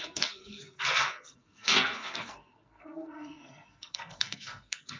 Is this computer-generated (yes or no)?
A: yes